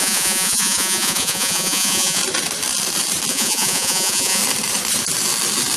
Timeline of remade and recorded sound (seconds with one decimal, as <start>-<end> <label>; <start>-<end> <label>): 0.0-2.2 remade; 2.2-3.3 recorded; 3.3-4.4 remade; 4.4-5.8 recorded